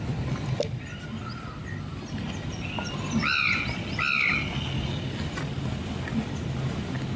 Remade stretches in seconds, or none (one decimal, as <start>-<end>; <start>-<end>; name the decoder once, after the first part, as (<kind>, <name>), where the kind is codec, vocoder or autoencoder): none

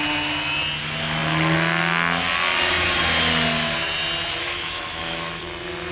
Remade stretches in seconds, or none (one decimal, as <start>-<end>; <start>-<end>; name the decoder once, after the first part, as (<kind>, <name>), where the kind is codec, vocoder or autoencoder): 4.4-5.4 (autoencoder, DAC-VAE)

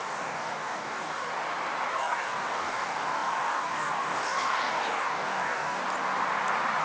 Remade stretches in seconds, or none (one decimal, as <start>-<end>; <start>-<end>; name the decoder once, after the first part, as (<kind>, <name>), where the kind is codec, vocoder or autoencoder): 0.0-1.3 (codec, DAC); 1.9-5.8

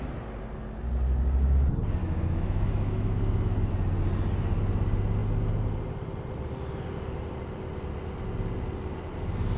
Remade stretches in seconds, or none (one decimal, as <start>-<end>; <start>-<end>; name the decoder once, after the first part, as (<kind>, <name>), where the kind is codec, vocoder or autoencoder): 2.0-3.7 (autoencoder, DAC-VAE)